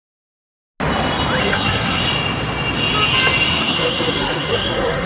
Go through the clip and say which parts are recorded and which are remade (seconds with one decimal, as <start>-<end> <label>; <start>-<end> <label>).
0.0-1.4 recorded; 1.4-2.0 remade; 2.0-3.5 recorded; 3.5-5.1 remade